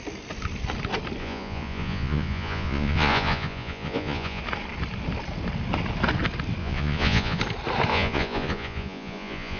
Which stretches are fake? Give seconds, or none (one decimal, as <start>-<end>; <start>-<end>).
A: 1.2-4.4; 6.6-7.4; 7.9-9.6